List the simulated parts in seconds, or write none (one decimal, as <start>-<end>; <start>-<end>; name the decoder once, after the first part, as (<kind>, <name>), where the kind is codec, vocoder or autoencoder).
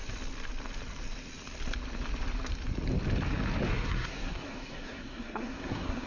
3.7-6.1 (codec, SNAC)